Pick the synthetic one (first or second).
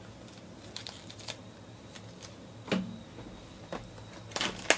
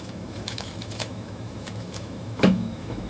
second